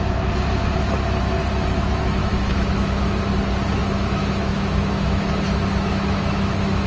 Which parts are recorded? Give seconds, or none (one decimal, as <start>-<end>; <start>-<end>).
0.0-2.2; 3.2-3.8